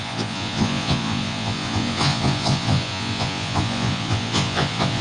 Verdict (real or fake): fake